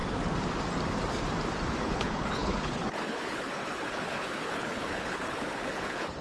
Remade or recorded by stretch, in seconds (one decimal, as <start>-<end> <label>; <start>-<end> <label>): 0.0-1.8 recorded; 1.8-6.2 remade